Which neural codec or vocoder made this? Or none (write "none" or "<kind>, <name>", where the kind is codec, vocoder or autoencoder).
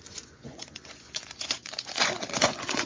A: vocoder, Vocos